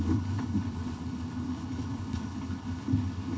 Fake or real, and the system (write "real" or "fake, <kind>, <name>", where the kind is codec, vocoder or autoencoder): fake, codec, HILCodec